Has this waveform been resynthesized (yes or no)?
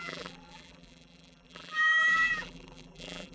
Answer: yes